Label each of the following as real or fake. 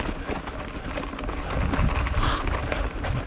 real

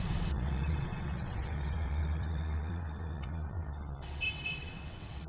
fake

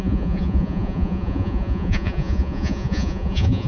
fake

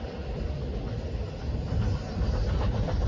real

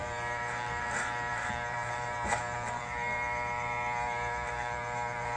fake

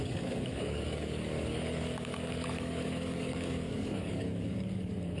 fake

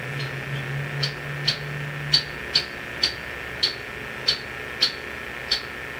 real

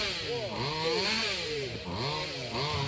real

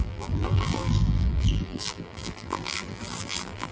fake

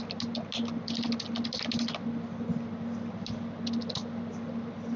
real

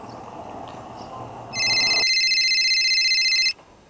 real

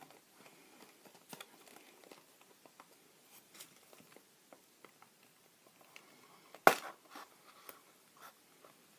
real